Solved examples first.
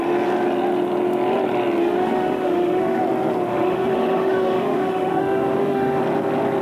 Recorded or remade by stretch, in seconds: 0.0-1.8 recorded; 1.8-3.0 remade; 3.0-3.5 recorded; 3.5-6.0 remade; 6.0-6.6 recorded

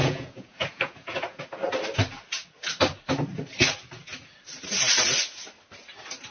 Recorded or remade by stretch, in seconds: 0.0-1.4 remade; 1.4-6.3 recorded

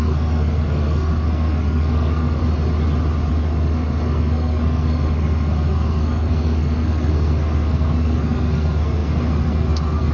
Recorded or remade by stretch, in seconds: 0.0-2.4 remade; 2.4-3.3 recorded; 3.3-10.1 remade

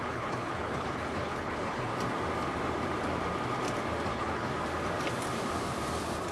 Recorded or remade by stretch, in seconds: 0.0-1.9 remade; 1.9-4.1 recorded; 4.1-4.5 remade; 4.5-6.3 recorded

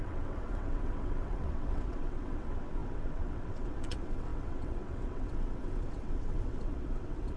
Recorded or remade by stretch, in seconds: 0.0-7.4 remade

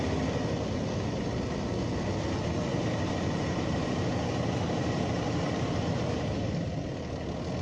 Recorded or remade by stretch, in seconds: 0.0-2.7 recorded; 2.7-6.5 remade; 6.5-7.6 recorded

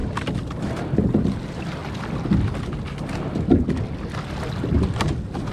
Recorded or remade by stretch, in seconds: 0.0-5.5 recorded

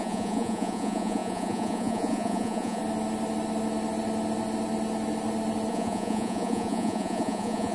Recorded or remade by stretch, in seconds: 0.0-2.8 remade; 2.8-5.7 recorded; 5.7-7.7 remade